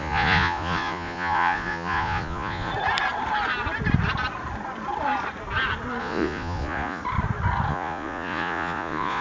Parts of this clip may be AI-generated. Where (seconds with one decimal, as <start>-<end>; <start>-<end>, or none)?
0.0-2.7; 6.0-7.0; 7.7-9.2